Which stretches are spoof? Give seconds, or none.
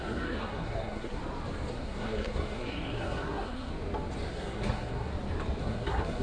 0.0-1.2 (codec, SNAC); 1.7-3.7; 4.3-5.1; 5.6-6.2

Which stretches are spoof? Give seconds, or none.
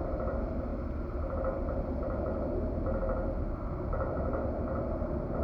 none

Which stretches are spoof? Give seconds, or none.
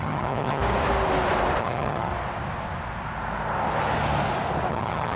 0.0-0.6 (vocoder, HiFi-GAN); 1.6-2.1; 4.7-5.2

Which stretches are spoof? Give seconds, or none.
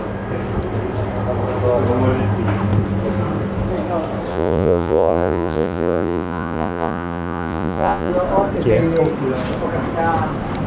4.3-8.1 (vocoder, Vocos)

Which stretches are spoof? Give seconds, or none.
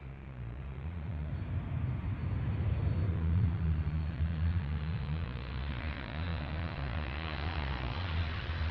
0.0-1.3 (vocoder, Vocos); 3.1-8.7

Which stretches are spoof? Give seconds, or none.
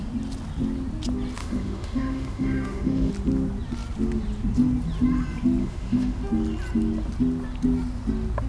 1.4-3.1 (autoencoder, DAC-VAE); 5.6-6.2